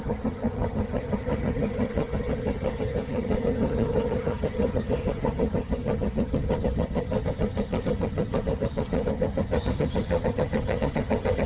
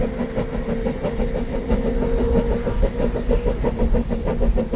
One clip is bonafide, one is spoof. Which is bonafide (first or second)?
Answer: second